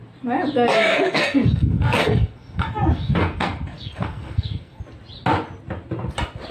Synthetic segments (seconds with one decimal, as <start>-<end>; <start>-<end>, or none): 0.9-4.8